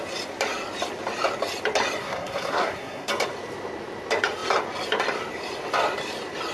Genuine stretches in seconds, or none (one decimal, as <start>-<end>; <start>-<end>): 0.0-2.0; 3.1-6.5